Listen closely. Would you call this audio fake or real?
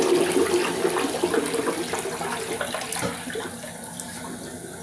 real